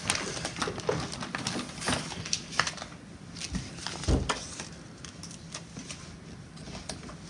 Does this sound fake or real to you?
real